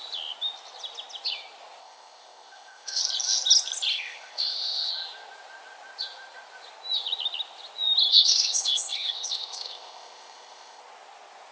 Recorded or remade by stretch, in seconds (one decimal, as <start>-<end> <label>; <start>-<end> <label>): 0.0-1.8 recorded; 1.8-3.0 remade; 3.0-3.9 recorded; 3.9-4.9 remade; 4.9-8.1 recorded; 8.1-10.8 remade; 10.8-11.5 recorded